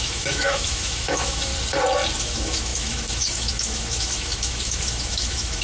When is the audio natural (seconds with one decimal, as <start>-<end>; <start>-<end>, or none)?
1.5-2.2